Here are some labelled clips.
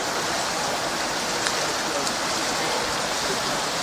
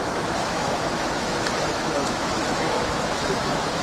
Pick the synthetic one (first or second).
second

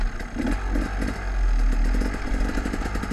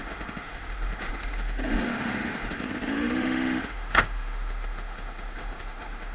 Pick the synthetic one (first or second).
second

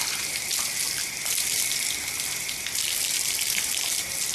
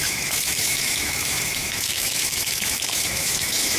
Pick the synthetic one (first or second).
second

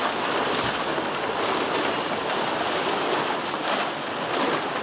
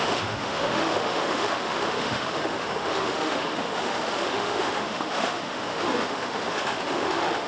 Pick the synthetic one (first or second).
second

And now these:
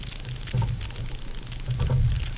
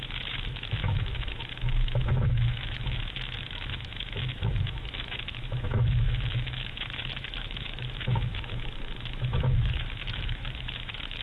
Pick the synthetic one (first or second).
second